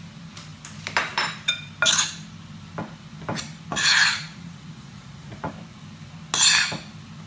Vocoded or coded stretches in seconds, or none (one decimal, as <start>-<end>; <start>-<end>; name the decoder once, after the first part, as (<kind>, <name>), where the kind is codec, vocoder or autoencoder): 3.7-5.5 (vocoder, Vocos)